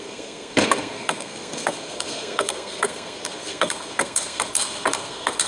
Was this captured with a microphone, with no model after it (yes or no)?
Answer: no